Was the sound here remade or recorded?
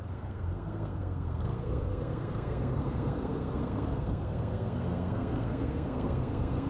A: remade